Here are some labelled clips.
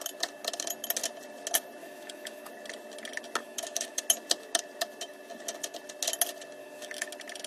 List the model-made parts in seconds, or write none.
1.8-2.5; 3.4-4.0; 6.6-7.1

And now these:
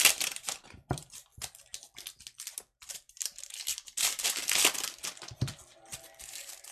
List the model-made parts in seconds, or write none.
0.0-1.3; 2.9-4.4; 6.2-6.7

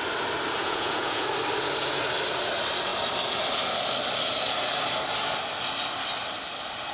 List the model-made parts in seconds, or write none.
0.6-1.3

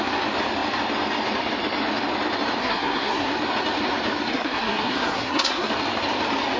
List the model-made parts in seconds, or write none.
2.6-3.3; 4.3-5.7

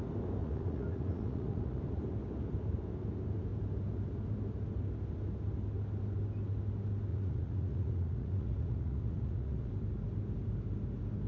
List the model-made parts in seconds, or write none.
0.4-1.8; 7.1-9.7

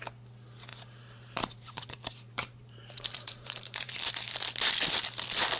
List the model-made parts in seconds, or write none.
0.7-4.1

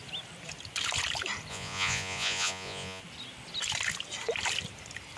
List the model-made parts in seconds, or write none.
1.5-3.0

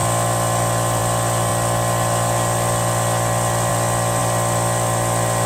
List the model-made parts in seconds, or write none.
none